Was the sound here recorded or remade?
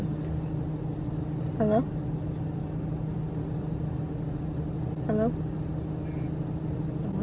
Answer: recorded